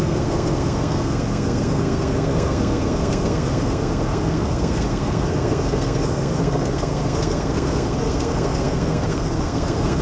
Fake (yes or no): yes